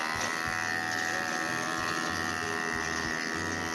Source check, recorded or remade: recorded